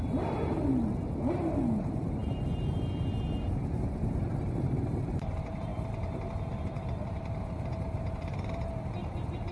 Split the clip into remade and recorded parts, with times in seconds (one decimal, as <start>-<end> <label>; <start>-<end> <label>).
0.0-0.7 remade; 0.7-1.3 recorded; 1.3-9.5 remade